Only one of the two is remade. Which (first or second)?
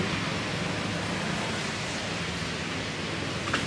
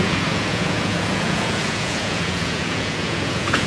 second